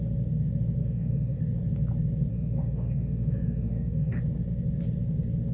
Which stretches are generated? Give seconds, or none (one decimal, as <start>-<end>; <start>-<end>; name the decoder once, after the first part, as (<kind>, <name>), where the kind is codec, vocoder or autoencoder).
0.8-1.4 (autoencoder, DAC-VAE); 2.3-4.2